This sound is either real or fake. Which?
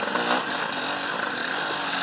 real